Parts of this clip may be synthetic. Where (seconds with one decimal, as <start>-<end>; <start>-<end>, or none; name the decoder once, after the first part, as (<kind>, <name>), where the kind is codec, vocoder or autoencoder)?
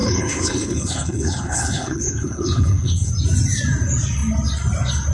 0.0-3.1 (codec, HILCodec)